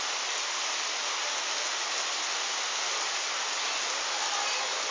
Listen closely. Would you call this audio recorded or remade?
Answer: recorded